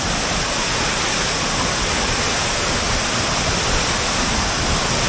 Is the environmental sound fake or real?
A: real